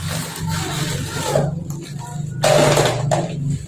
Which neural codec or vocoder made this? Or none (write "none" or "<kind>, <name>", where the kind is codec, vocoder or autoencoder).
none